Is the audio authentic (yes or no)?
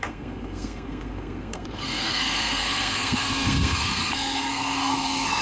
no